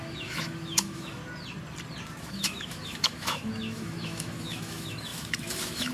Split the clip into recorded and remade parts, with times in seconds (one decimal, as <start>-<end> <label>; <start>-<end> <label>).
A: 0.0-1.2 remade; 1.2-2.2 recorded; 2.2-5.9 remade